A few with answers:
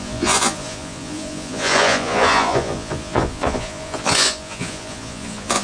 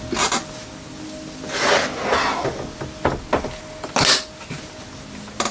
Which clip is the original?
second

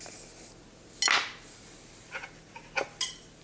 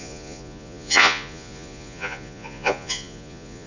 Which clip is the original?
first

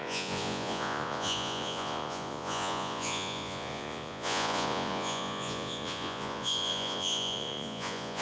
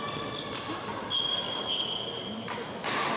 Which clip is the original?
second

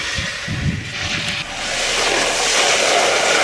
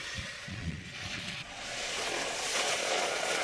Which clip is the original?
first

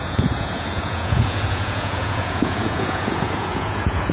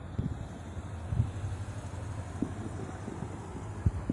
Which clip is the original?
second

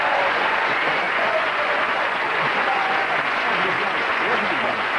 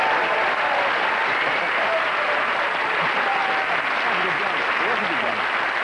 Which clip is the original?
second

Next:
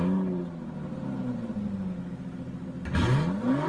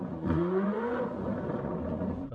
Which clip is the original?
first